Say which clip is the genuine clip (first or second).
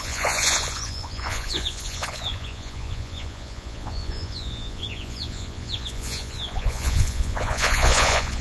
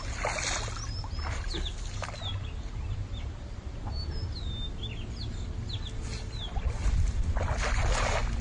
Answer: second